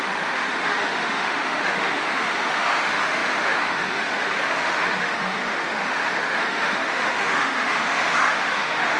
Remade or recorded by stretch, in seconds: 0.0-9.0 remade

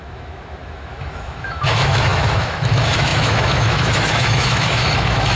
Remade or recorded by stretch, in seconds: 0.0-5.4 remade

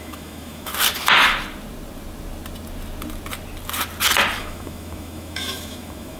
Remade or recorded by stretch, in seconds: 0.0-0.7 remade; 0.7-4.4 recorded; 4.4-6.2 remade

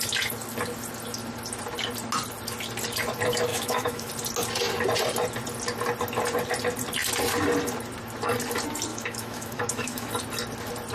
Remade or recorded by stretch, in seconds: 0.0-3.5 recorded; 3.5-4.1 remade; 4.1-8.9 recorded; 8.9-10.1 remade; 10.1-10.9 recorded